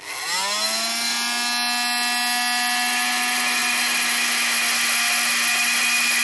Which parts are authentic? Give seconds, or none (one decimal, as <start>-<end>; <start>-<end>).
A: 0.0-6.2